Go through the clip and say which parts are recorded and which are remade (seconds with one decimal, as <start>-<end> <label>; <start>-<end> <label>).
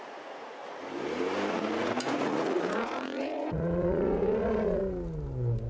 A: 0.0-0.6 remade; 0.6-1.5 recorded; 1.5-4.8 remade; 4.8-5.7 recorded